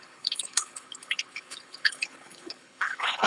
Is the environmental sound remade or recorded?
remade